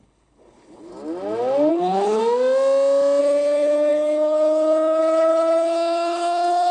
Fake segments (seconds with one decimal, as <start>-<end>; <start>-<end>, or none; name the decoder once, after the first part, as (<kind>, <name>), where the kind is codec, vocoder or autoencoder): 0.0-0.9 (codec, HILCodec); 1.7-2.2; 3.2-6.7